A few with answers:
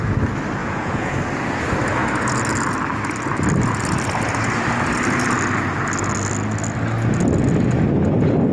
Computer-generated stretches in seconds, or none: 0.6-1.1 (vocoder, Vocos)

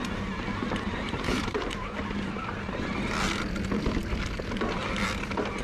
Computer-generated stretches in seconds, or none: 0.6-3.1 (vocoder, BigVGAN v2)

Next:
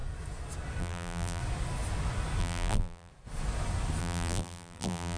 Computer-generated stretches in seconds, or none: 0.8-1.4 (vocoder, BigVGAN v2); 2.4-3.1; 4.0-5.2

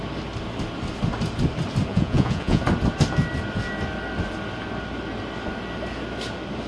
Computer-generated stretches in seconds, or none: 1.9-2.6 (vocoder, Vocos)